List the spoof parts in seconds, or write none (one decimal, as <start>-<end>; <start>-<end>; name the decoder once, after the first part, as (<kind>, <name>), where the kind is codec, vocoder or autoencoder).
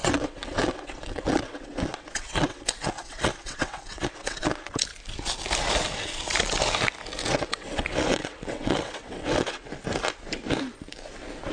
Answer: 0.0-2.6 (vocoder, WaveNeXt); 3.0-4.4; 7.2-9.7